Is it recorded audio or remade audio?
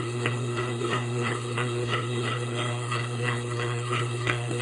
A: remade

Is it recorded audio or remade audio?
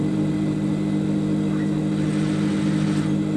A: recorded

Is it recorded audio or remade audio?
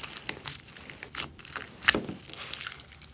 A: recorded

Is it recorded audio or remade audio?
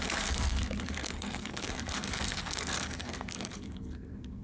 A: remade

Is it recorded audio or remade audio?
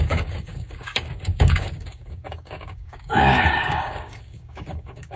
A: remade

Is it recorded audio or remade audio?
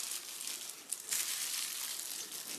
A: recorded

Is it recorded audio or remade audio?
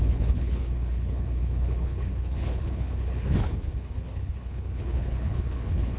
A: remade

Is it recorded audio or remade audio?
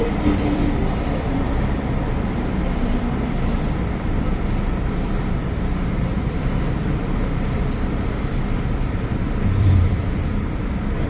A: remade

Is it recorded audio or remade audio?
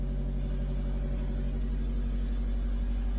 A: recorded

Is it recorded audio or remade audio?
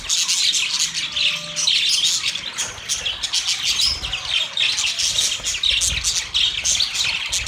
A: recorded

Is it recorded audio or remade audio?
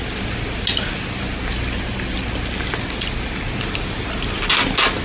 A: recorded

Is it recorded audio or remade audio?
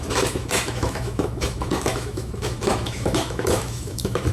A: remade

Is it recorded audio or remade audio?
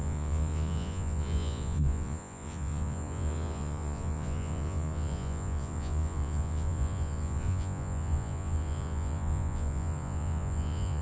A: remade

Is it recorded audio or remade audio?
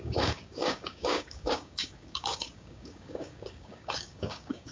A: remade